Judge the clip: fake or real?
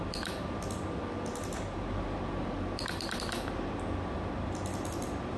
real